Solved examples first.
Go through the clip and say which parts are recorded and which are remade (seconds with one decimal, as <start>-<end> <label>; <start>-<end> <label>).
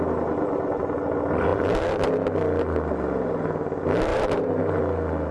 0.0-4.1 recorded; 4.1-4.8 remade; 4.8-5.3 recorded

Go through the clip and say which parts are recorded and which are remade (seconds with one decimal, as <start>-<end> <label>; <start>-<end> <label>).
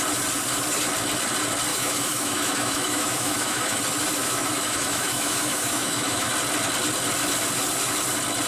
0.0-1.7 recorded; 1.7-3.8 remade; 3.8-4.2 recorded; 4.2-6.3 remade; 6.3-8.5 recorded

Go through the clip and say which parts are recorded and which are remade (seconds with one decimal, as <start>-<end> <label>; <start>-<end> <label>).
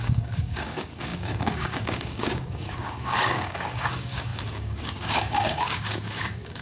0.0-6.6 remade